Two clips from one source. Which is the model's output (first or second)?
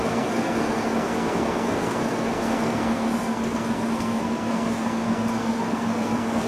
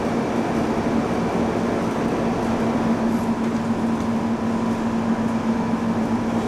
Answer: first